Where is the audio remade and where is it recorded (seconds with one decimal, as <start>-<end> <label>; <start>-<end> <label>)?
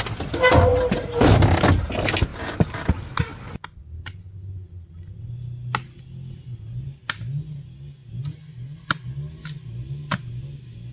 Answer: 0.0-0.7 recorded; 0.7-1.9 remade; 1.9-2.3 recorded; 2.3-2.8 remade; 2.8-10.9 recorded